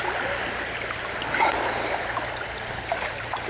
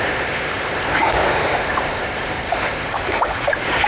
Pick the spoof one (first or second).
second